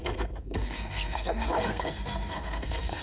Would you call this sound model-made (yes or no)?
yes